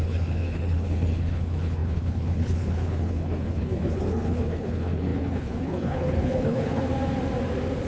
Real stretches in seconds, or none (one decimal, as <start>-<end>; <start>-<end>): 6.9-7.9